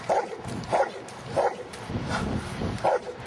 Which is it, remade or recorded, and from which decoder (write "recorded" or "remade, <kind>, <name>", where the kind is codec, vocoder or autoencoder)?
recorded